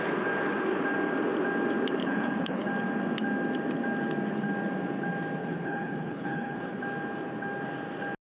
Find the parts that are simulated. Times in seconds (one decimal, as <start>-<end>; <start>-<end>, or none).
2.0-2.7; 5.4-6.8